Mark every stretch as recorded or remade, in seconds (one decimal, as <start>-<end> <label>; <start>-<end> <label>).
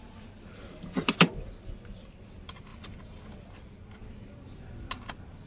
0.0-2.7 recorded; 2.7-3.2 remade; 3.2-5.5 recorded